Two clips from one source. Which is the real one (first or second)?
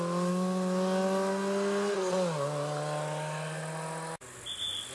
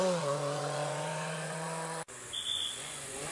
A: first